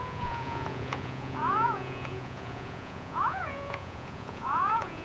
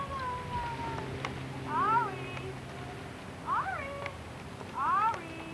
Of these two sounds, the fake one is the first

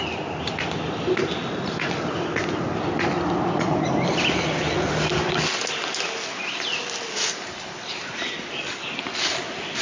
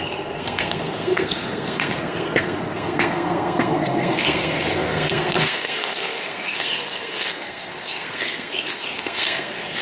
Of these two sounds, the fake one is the second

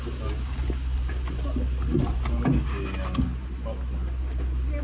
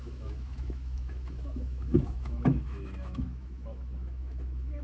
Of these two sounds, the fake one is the second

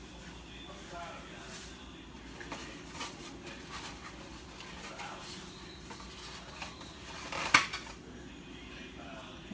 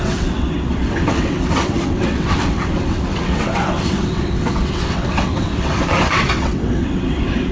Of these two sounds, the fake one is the second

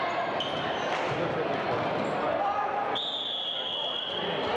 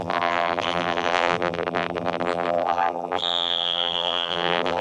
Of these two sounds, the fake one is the second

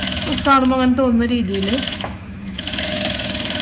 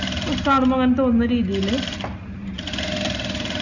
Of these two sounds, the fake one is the first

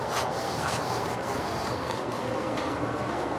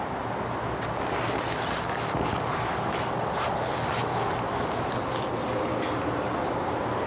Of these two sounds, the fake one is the first